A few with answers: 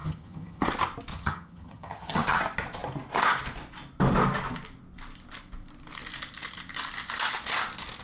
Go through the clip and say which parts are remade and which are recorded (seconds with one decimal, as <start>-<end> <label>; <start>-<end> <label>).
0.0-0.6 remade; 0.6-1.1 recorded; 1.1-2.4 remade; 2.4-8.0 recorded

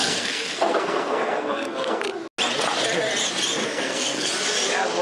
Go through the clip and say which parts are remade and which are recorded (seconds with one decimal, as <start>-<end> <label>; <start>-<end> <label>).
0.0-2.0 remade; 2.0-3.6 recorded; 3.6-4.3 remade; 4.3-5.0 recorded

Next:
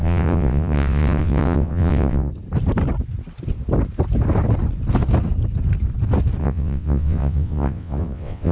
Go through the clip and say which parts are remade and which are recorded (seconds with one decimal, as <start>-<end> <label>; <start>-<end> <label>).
0.0-2.3 remade; 2.3-6.4 recorded; 6.4-8.5 remade

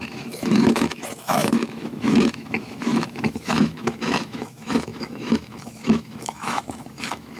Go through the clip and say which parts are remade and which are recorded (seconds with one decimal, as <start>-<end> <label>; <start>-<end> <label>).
0.0-7.4 remade

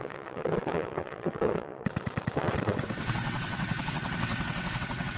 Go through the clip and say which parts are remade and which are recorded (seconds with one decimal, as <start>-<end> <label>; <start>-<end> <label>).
0.0-5.2 remade

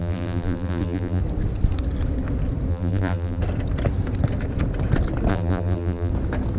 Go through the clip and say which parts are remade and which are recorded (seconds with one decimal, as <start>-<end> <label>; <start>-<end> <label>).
0.0-1.2 remade; 1.2-2.7 recorded; 2.7-3.4 remade; 3.4-5.3 recorded; 5.3-6.1 remade; 6.1-6.6 recorded